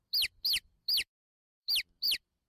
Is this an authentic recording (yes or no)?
no